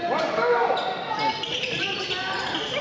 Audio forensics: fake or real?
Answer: real